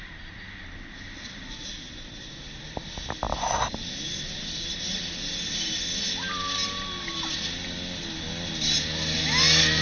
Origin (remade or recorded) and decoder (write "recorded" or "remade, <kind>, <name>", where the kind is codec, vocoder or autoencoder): recorded